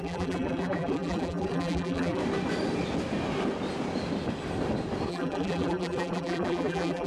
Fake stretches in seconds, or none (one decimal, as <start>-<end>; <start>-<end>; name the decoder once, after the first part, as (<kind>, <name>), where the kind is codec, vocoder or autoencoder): 0.0-2.2 (vocoder, BigVGAN v2); 5.1-7.1